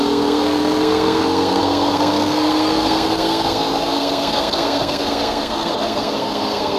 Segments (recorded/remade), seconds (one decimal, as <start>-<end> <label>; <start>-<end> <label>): 0.0-6.8 remade